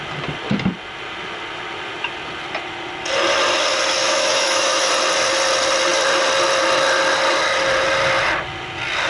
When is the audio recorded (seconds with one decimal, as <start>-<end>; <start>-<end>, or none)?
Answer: 0.0-4.0; 4.9-9.1